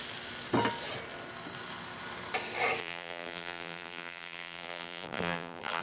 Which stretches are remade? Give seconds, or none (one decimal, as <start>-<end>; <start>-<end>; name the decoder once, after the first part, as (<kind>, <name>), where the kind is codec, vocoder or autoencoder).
2.8-5.8 (vocoder, BigVGAN v2)

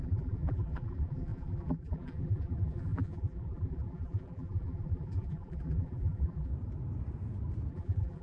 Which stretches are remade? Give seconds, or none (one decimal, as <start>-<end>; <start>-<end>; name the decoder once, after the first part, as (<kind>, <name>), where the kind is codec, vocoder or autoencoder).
0.0-6.5 (vocoder, BigVGAN v2); 7.7-8.2

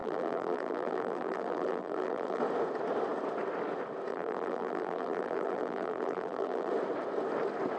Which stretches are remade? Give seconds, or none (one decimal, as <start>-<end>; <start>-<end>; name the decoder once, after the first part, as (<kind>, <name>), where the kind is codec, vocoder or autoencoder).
0.0-2.4 (vocoder, BigVGAN v2); 4.1-6.7

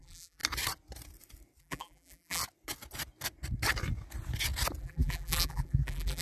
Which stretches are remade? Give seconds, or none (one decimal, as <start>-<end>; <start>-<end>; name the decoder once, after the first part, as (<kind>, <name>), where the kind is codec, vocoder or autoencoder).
0.0-0.4 (vocoder, BigVGAN v2); 1.6-2.4; 4.8-6.2

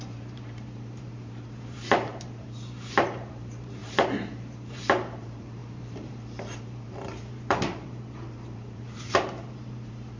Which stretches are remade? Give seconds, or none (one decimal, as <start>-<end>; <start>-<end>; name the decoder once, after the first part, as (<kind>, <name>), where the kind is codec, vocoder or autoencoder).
0.0-10.2 (vocoder, BigVGAN v2)

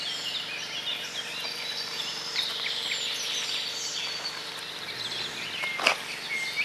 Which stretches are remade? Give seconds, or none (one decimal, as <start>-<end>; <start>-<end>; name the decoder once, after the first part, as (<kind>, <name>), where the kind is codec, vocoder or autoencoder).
0.9-1.9 (vocoder, BigVGAN v2)

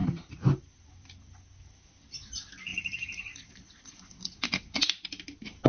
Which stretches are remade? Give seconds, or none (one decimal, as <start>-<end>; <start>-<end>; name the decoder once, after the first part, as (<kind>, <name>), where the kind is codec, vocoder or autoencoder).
2.7-4.0 (vocoder, BigVGAN v2)